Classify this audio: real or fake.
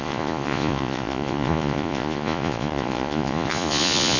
fake